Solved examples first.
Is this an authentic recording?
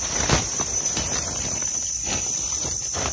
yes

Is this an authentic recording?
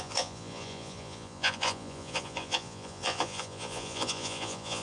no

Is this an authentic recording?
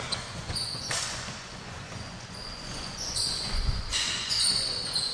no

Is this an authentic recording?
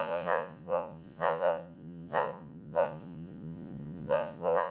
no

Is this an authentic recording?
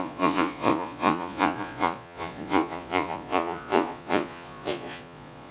no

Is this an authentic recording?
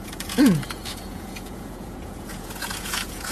no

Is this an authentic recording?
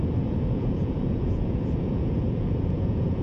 no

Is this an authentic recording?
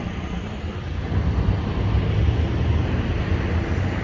yes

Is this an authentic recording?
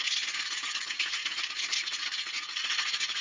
no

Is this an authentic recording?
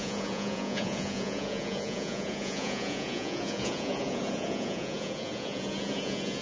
no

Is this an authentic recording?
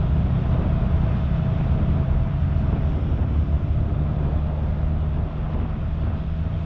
yes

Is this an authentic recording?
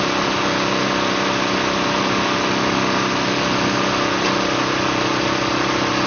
yes